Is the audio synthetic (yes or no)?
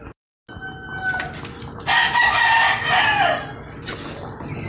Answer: no